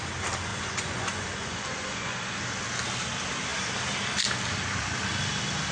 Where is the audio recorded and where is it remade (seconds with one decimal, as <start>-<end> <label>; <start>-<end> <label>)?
0.0-0.5 recorded; 0.5-2.4 remade; 2.4-5.7 recorded